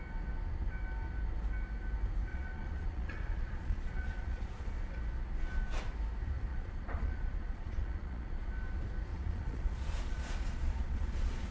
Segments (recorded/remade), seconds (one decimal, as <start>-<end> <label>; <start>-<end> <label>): 0.0-2.3 recorded; 2.3-4.7 remade; 4.7-6.5 recorded; 6.5-8.5 remade; 8.5-9.1 recorded; 9.1-11.5 remade